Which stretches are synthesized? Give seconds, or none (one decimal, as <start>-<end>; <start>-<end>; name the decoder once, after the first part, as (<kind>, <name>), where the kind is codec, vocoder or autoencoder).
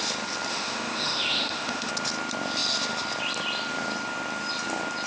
0.5-1.9 (autoencoder, DAC-VAE)